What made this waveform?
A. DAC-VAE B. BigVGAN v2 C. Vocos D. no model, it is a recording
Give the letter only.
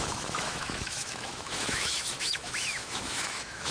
A